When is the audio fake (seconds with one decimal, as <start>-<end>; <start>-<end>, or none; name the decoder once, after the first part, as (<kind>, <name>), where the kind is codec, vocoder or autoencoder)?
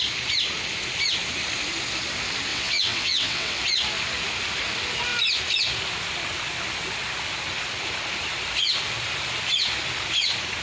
2.5-3.6 (vocoder, WaveNeXt)